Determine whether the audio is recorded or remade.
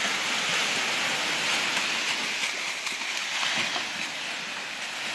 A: recorded